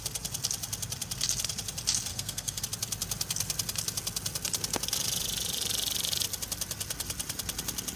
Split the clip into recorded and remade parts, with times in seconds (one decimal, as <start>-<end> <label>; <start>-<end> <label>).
0.0-2.1 recorded; 2.1-2.6 remade; 2.6-8.0 recorded